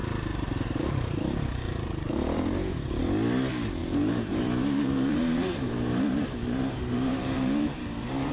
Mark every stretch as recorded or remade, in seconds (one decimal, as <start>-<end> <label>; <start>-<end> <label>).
0.0-3.0 remade; 3.0-3.8 recorded; 3.8-8.3 remade